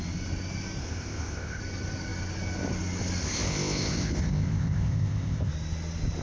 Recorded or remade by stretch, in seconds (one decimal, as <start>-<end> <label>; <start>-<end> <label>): 0.0-0.8 recorded; 0.8-1.6 remade; 1.6-3.2 recorded; 3.2-5.5 remade; 5.5-6.2 recorded